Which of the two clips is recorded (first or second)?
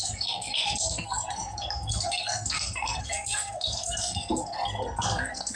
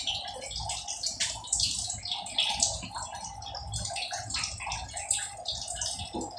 second